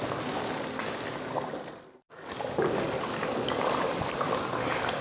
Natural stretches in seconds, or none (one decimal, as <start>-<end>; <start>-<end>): 0.0-3.2; 3.7-5.0